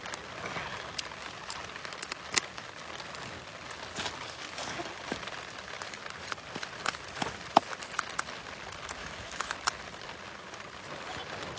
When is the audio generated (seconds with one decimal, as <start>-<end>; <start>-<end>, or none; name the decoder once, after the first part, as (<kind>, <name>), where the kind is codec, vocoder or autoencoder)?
9.0-9.5 (autoencoder, DAC-VAE)